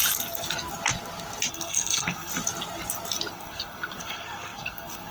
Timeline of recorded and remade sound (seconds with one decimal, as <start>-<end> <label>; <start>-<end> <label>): 0.0-1.5 recorded; 1.5-2.3 remade; 2.3-3.3 recorded; 3.3-5.1 remade